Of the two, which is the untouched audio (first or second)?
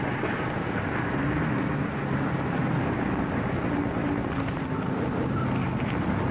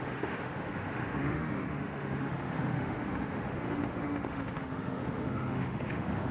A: first